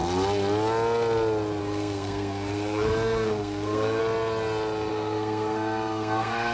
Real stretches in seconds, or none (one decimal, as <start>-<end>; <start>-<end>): 0.0-1.6; 4.0-4.9